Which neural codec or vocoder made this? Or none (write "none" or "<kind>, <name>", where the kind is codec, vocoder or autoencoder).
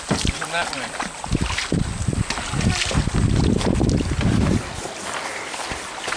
none